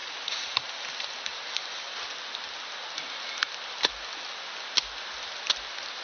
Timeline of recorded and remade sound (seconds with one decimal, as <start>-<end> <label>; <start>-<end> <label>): 0.0-0.7 remade; 0.7-6.0 recorded